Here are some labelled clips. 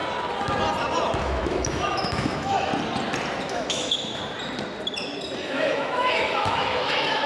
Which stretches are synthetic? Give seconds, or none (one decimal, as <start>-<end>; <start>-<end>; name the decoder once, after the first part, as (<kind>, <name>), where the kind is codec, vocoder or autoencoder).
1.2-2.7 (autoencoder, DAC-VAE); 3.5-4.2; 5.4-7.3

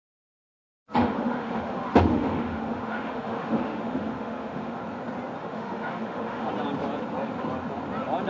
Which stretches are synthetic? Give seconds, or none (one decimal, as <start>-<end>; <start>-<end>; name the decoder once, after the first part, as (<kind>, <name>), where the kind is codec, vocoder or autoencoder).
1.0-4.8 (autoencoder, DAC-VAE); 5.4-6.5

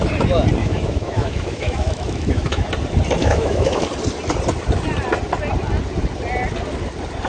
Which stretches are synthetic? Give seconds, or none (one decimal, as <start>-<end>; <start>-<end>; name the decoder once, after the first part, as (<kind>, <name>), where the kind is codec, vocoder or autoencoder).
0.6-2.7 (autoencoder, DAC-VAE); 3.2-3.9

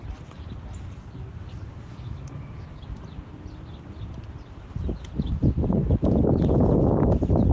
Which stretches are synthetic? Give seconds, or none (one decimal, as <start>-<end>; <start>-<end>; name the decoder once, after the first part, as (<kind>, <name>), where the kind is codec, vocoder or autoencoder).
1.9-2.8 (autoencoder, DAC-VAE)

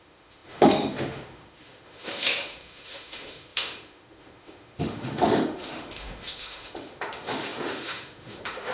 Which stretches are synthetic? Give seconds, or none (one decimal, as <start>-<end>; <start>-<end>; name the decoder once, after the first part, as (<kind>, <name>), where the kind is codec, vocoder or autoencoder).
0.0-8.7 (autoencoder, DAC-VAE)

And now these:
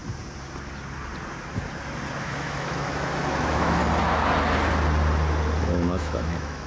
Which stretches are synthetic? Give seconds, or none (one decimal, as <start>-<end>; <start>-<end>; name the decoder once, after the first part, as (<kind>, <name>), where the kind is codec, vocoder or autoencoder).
2.2-3.8 (autoencoder, DAC-VAE); 5.6-6.7

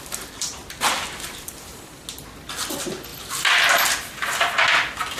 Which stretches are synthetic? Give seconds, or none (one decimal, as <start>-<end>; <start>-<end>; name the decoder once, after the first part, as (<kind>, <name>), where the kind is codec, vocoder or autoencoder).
none